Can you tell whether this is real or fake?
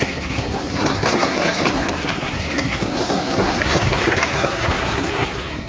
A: fake